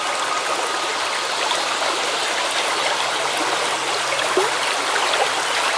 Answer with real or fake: real